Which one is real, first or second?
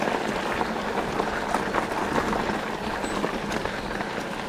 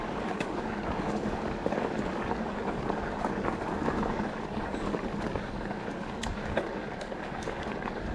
first